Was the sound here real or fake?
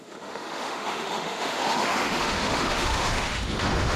fake